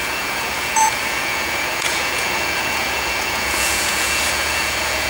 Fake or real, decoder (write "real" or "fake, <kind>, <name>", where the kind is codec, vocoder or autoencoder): fake, vocoder, Vocos